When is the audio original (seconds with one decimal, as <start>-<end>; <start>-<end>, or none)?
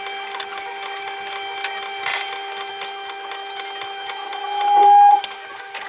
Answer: 0.0-5.9